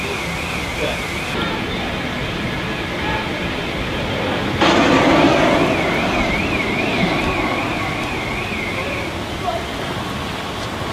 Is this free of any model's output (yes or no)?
yes